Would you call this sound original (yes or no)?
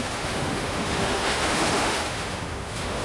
no